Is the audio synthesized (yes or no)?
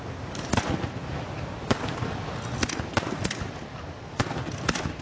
no